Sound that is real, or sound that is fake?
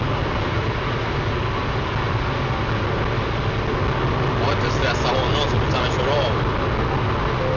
real